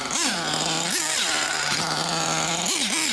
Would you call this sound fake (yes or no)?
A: no